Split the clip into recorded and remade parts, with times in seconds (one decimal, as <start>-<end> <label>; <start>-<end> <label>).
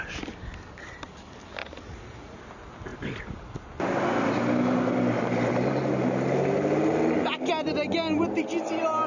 0.0-1.6 recorded; 1.6-2.4 remade; 2.4-9.1 recorded